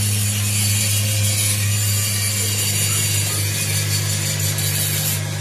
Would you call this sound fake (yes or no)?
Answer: no